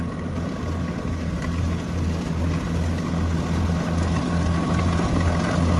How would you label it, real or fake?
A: real